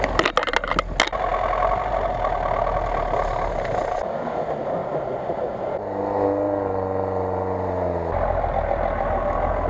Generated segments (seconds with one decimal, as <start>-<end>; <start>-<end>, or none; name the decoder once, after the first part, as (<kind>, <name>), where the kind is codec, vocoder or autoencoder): none